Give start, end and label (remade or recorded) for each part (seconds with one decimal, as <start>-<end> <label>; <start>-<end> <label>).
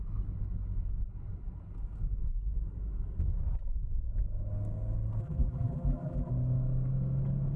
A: 0.0-5.2 recorded; 5.2-6.3 remade; 6.3-7.6 recorded